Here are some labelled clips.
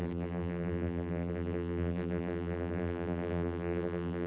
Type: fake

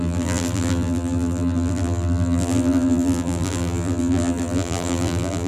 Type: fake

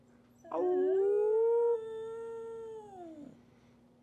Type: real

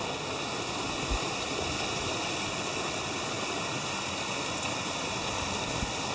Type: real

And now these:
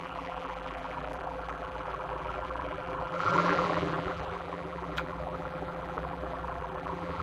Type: fake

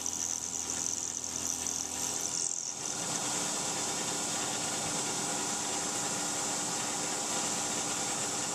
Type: real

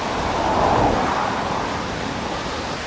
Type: real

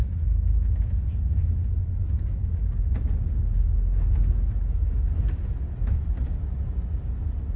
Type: real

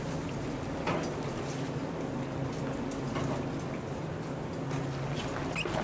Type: real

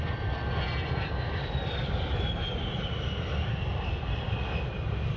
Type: real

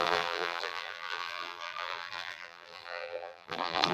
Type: fake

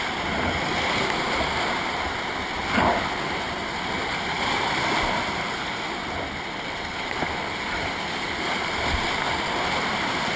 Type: real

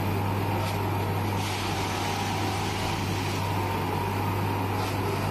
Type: real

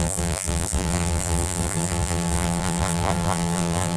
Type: fake